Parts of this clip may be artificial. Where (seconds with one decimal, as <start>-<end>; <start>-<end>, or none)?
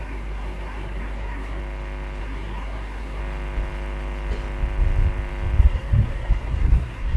0.0-1.6; 2.2-3.2; 5.6-7.2